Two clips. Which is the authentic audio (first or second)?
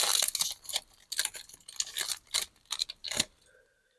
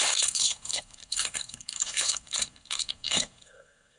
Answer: first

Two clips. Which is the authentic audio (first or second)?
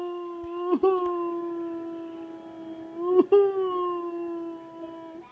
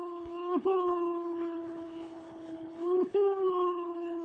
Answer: first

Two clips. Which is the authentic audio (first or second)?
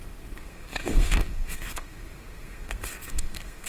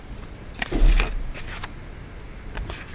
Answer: second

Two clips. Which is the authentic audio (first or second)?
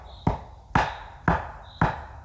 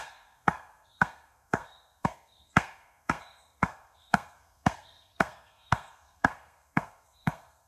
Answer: first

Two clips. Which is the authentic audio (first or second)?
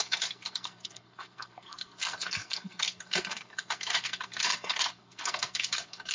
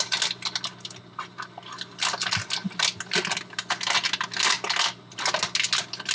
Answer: second